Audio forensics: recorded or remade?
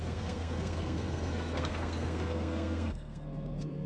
remade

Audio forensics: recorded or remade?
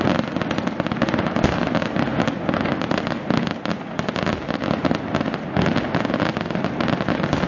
recorded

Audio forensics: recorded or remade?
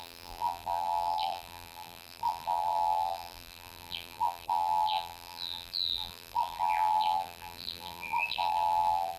remade